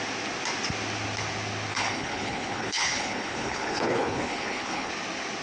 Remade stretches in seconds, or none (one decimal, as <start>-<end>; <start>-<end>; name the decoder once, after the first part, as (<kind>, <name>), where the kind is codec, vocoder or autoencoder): 1.7-4.9 (codec, HILCodec)